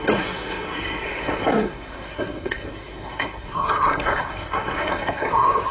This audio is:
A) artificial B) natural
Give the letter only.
A